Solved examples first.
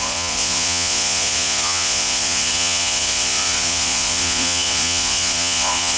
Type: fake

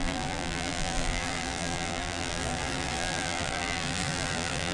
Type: fake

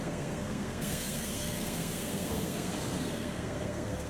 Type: fake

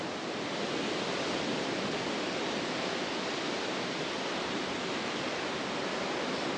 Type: real